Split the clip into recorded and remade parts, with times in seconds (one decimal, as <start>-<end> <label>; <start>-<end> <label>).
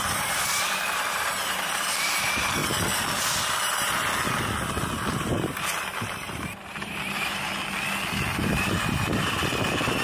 0.0-2.6 remade; 2.6-5.1 recorded; 5.1-7.5 remade; 7.5-8.6 recorded; 8.6-10.0 remade